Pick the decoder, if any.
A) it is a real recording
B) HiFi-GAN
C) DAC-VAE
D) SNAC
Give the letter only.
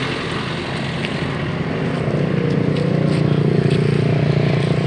A